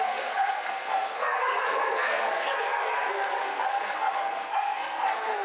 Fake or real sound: fake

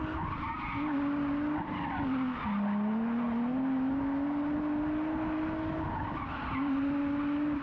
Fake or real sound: real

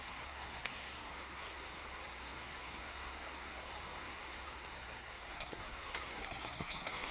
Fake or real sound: fake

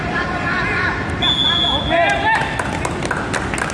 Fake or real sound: real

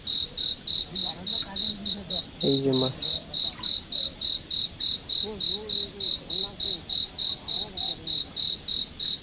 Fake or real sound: real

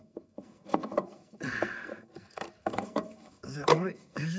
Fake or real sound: fake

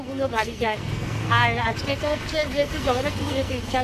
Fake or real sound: fake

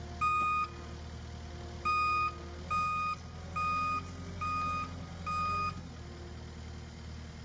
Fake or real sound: real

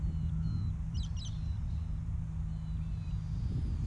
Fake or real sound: real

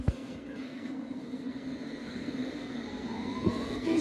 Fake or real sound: fake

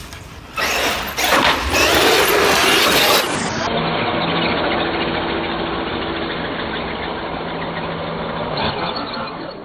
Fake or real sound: real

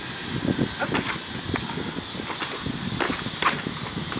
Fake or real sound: real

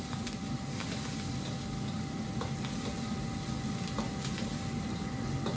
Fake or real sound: real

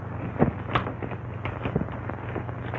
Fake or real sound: real